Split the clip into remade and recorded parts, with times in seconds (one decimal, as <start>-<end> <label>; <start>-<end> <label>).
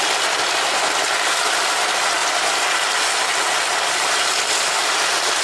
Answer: 0.0-5.4 recorded